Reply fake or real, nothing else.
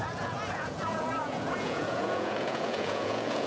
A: fake